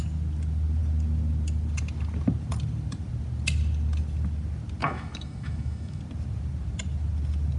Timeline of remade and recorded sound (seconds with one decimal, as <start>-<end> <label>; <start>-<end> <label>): 0.0-4.8 recorded; 4.8-6.0 remade; 6.0-7.6 recorded

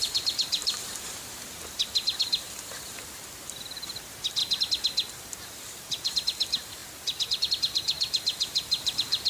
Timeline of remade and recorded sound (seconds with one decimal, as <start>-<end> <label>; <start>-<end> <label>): 0.0-4.4 remade; 4.4-5.1 recorded; 5.1-9.3 remade